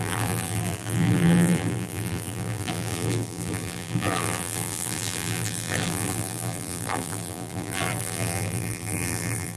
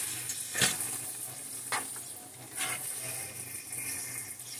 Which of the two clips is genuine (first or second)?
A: second